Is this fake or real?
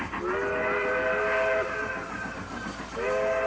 real